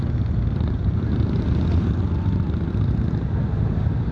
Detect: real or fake fake